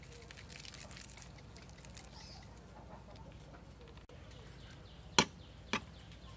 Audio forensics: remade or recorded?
recorded